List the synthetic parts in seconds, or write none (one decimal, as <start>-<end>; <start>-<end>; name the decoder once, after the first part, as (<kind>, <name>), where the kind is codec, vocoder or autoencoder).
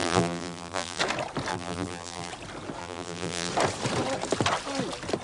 0.0-1.0 (vocoder, BigVGAN v2); 1.5-2.3; 2.8-3.5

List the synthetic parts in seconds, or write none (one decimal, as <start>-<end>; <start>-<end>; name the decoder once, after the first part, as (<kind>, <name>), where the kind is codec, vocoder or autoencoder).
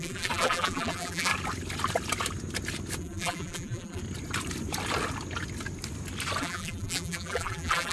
0.0-1.3 (vocoder, BigVGAN v2); 3.0-4.0; 6.4-7.9